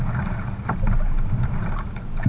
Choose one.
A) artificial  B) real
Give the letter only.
A